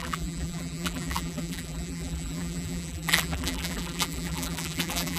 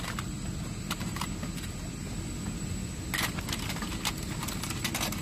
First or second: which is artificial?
first